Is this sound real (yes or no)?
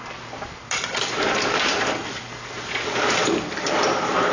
yes